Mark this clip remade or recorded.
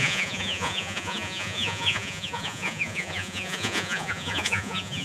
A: remade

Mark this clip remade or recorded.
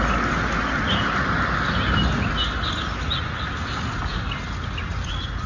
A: recorded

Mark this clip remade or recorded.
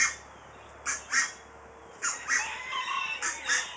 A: recorded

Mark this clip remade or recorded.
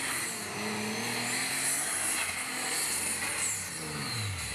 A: recorded